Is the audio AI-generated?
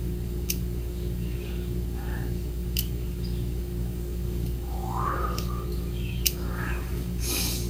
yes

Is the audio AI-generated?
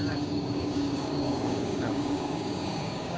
yes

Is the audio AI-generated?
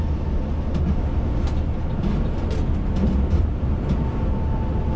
no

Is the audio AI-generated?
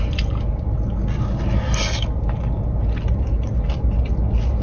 no